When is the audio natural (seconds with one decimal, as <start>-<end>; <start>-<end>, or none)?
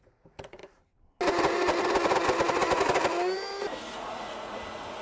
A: 0.6-3.6